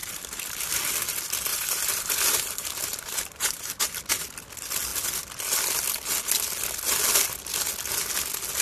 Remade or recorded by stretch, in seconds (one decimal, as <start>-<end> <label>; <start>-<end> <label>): 0.0-0.6 remade; 0.6-1.5 recorded; 1.5-4.0 remade; 4.0-8.6 recorded